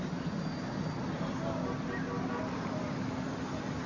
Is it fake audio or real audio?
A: real